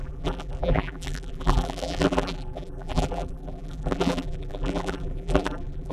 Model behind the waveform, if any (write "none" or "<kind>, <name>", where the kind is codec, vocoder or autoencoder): vocoder, BigVGAN v2